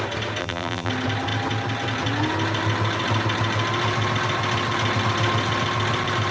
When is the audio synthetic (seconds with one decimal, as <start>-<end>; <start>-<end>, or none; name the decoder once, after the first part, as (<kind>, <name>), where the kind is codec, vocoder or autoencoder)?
0.4-0.9 (vocoder, BigVGAN v2)